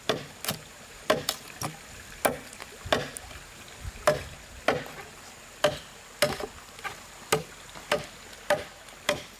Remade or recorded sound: recorded